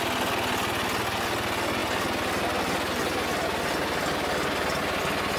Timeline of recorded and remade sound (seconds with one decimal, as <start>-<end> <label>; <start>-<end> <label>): 0.0-5.4 recorded

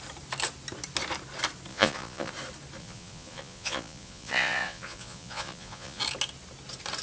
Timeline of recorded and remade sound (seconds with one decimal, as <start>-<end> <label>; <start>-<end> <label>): 0.0-1.7 recorded; 1.7-2.3 remade; 2.3-2.8 recorded; 2.8-6.0 remade; 6.0-7.0 recorded

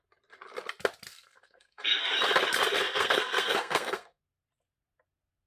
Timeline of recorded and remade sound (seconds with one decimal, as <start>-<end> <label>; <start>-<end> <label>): 0.0-1.1 recorded; 1.1-2.0 remade; 2.0-2.8 recorded; 2.8-4.2 remade; 4.2-5.5 recorded

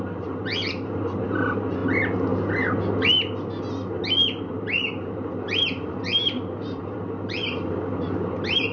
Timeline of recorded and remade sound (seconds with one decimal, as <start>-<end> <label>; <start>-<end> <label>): 0.0-1.8 remade; 1.8-4.5 recorded; 4.5-8.7 remade